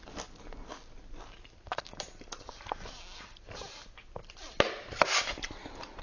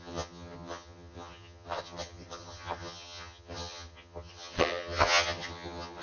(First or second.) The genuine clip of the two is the first